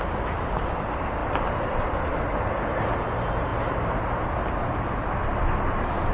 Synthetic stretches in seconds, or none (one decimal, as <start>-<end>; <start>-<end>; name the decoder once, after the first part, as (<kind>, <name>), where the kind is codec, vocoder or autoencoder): 1.2-3.0 (vocoder, BigVGAN v2); 3.5-4.3